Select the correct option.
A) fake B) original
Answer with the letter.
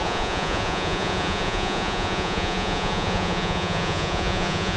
A